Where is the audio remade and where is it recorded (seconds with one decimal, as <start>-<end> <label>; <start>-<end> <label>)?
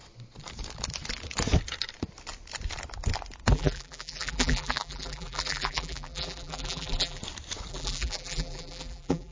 0.0-3.5 recorded; 3.5-7.2 remade; 7.2-7.7 recorded; 7.7-9.3 remade